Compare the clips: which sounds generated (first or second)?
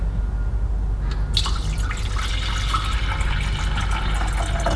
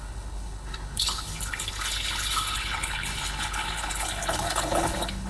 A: second